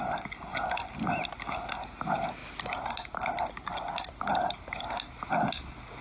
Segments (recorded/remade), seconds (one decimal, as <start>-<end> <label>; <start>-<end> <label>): 0.0-6.0 recorded